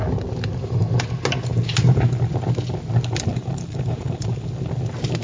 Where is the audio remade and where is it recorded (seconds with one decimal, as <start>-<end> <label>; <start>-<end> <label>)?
0.0-1.5 recorded; 1.5-2.2 remade; 2.2-3.3 recorded; 3.3-4.5 remade; 4.5-5.2 recorded